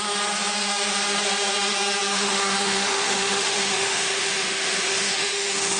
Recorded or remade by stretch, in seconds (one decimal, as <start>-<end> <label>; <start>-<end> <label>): 0.0-2.1 recorded; 2.1-5.8 remade